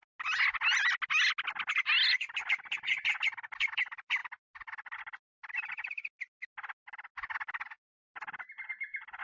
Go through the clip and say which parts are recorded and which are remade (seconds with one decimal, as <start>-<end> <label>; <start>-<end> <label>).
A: 0.0-9.2 recorded